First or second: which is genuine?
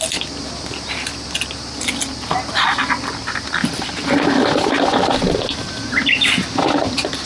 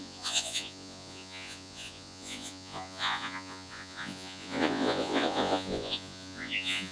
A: first